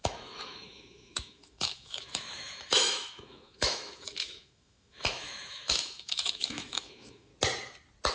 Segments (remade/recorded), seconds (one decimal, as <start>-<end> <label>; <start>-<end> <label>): 0.0-7.3 remade; 7.3-8.1 recorded